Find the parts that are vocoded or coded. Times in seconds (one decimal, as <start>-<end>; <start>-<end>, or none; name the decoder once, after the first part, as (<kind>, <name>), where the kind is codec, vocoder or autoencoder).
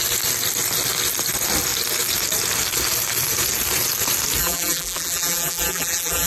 4.4-6.3 (vocoder, BigVGAN v2)